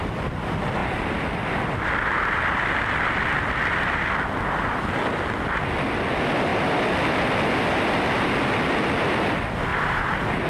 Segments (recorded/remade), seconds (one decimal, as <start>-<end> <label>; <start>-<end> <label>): 0.0-6.5 recorded; 6.5-7.5 remade; 7.5-9.7 recorded; 9.7-10.5 remade